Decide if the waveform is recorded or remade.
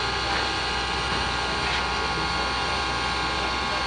recorded